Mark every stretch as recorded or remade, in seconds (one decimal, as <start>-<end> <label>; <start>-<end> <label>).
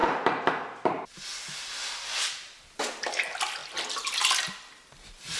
0.0-5.4 recorded